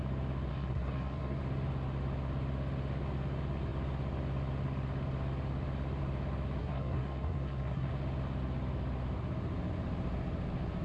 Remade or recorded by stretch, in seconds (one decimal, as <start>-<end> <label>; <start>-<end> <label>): 0.0-0.5 recorded; 0.5-1.4 remade; 1.4-6.6 recorded; 6.6-7.9 remade; 7.9-10.8 recorded

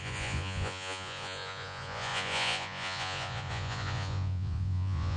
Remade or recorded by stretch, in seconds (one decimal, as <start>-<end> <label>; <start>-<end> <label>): 0.0-5.2 remade

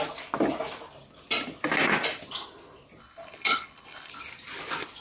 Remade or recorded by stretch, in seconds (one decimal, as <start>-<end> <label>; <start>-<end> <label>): 0.0-3.0 recorded; 3.0-4.1 remade; 4.1-5.0 recorded